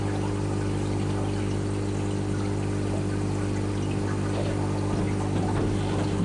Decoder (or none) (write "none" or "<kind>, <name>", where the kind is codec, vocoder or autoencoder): none